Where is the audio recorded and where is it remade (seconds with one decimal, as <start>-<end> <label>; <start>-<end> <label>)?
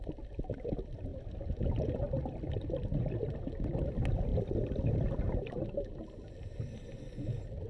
0.0-7.7 recorded